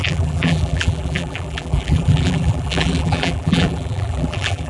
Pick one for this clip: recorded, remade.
remade